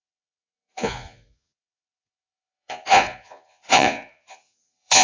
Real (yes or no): no